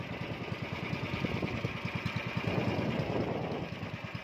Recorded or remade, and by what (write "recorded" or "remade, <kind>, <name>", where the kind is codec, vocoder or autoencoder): recorded